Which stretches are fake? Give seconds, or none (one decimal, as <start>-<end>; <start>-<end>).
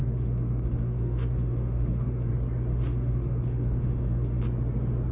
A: 0.0-2.3; 2.7-4.4